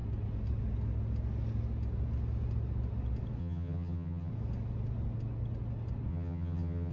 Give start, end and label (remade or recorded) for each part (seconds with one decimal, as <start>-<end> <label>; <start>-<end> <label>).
0.0-3.4 recorded; 3.4-4.3 remade; 4.3-6.1 recorded; 6.1-6.9 remade